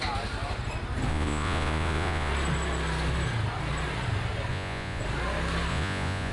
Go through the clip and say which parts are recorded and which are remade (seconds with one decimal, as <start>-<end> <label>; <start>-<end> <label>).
0.0-1.1 recorded; 1.1-2.3 remade; 2.3-4.5 recorded; 4.5-5.0 remade; 5.0-5.7 recorded; 5.7-6.3 remade